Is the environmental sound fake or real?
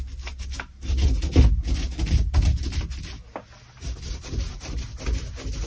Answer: real